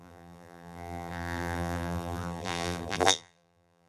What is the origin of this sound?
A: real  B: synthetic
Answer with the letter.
B